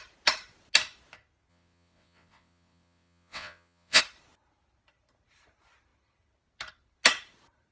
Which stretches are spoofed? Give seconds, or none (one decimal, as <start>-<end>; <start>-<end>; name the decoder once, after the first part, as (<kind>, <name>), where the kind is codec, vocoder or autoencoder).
1.5-4.0 (vocoder, WaveNeXt)